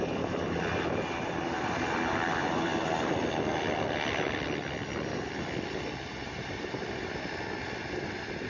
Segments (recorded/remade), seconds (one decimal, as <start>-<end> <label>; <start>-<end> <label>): 0.0-2.7 remade; 2.7-7.6 recorded; 7.6-8.5 remade